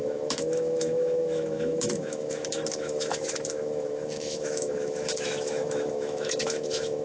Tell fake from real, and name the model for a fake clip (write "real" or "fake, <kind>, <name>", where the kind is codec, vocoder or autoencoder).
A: fake, autoencoder, DAC-VAE